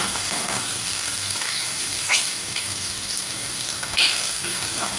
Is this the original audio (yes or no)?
no